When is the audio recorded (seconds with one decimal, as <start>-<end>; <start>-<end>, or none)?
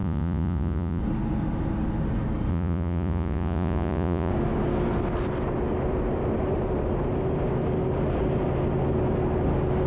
1.0-2.5; 4.3-9.9